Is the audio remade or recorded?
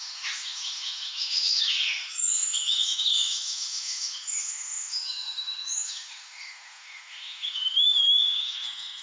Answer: remade